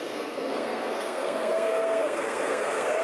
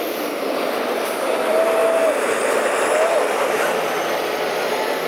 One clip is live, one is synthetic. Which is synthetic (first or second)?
first